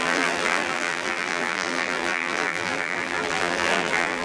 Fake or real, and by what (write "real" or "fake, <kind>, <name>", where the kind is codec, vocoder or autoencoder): fake, vocoder, BigVGAN v2